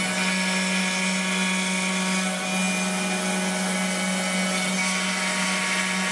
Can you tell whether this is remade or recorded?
recorded